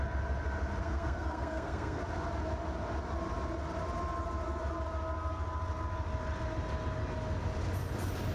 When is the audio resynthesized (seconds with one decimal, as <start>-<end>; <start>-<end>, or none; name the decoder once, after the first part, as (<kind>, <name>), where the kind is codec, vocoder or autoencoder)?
0.8-2.0 (codec, SNAC)